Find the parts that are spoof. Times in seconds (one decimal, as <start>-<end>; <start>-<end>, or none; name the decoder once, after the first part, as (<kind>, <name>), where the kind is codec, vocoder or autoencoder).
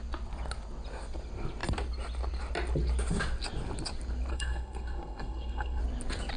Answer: 4.3-5.8 (codec, SNAC)